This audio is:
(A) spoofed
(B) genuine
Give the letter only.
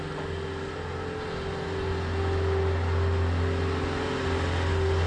B